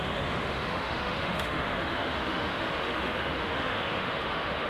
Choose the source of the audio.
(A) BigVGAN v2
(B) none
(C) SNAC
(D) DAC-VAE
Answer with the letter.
D